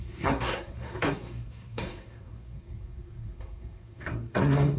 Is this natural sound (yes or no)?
no